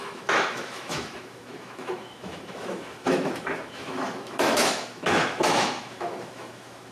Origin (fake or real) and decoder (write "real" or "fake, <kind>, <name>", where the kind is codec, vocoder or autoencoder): fake, autoencoder, DAC-VAE